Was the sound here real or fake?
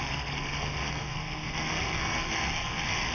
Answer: fake